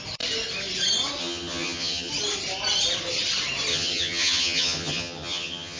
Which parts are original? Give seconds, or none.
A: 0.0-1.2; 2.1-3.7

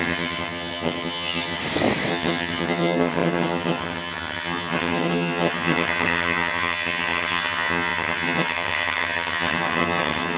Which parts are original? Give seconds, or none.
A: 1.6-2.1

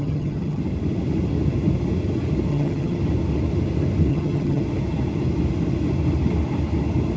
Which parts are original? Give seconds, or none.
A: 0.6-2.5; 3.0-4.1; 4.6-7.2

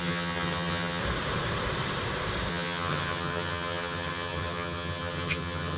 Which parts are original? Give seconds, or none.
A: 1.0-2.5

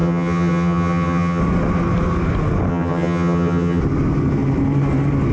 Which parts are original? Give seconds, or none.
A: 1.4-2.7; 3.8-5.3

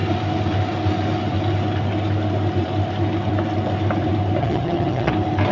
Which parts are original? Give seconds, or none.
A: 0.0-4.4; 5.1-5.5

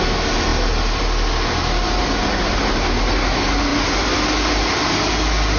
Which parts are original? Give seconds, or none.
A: 0.0-5.6

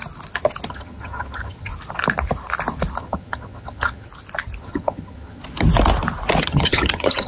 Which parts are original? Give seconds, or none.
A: 0.0-0.7; 1.7-3.0; 4.1-4.6; 5.4-6.4